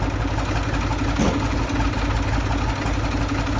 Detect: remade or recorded recorded